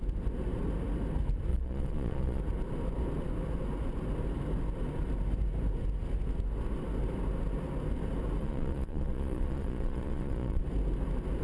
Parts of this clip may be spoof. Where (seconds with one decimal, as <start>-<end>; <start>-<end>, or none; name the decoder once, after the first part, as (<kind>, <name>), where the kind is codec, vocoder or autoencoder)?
1.5-2.4 (vocoder, Vocos); 8.4-10.6